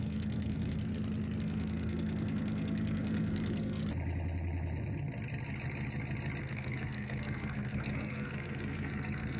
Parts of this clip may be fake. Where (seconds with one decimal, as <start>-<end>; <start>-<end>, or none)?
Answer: 0.0-0.9; 1.4-3.8; 6.4-9.4